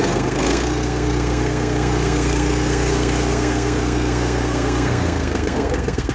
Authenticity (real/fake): fake